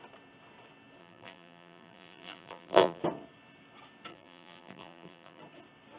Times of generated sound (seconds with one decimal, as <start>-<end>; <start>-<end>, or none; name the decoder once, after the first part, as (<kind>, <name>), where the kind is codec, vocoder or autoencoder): 1.0-3.0 (vocoder, BigVGAN v2); 4.1-5.4